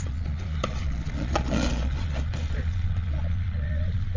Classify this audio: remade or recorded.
remade